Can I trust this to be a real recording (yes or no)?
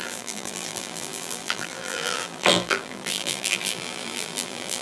no